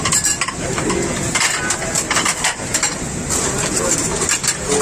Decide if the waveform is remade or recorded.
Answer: recorded